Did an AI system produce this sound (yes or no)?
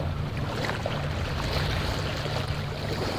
yes